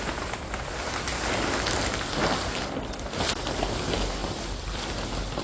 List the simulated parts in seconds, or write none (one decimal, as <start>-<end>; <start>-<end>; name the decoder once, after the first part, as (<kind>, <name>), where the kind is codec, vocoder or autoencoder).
1.1-1.8 (vocoder, BigVGAN v2); 4.2-4.9